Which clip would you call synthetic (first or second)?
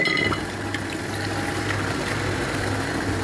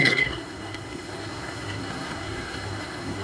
second